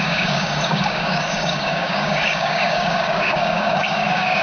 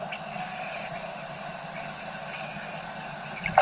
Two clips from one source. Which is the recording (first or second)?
second